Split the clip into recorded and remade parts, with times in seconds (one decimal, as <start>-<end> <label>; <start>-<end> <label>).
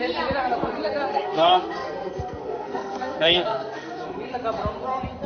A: 0.0-1.1 recorded; 1.1-4.3 remade; 4.3-5.3 recorded